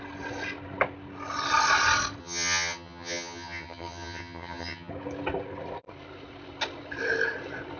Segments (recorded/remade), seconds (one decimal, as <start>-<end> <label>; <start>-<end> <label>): 0.0-2.2 recorded; 2.2-4.9 remade; 4.9-7.8 recorded